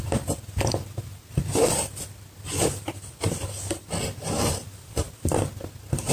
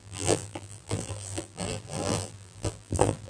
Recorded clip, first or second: first